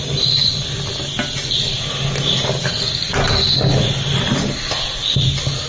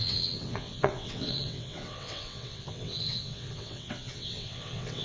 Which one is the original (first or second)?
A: first